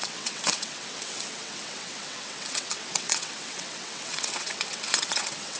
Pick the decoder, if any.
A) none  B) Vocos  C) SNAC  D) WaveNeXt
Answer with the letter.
D